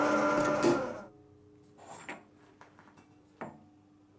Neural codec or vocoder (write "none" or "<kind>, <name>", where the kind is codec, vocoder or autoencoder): none